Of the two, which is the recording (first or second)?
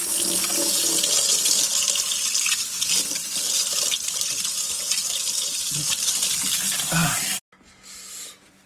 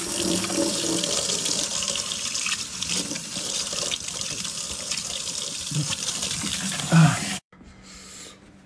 first